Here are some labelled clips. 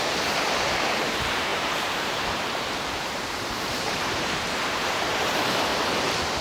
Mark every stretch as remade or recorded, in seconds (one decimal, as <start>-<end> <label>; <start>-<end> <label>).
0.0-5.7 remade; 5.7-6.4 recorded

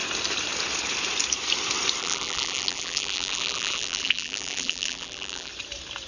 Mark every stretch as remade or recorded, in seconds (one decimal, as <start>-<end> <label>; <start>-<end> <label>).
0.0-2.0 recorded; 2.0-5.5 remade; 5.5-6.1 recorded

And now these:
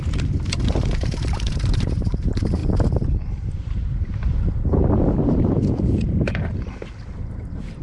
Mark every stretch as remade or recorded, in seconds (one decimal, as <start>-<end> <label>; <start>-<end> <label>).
0.0-7.8 remade

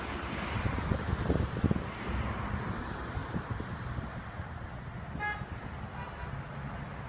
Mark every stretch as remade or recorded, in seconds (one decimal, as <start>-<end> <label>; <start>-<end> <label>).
0.0-0.9 remade; 0.9-2.8 recorded; 2.8-3.2 remade; 3.2-7.1 recorded